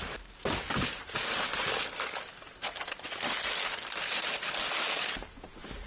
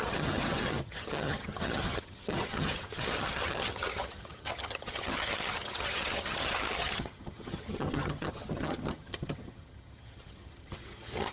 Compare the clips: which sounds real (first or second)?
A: first